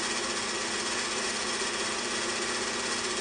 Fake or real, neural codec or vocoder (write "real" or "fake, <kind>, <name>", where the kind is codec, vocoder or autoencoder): real